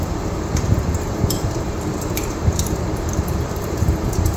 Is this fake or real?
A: fake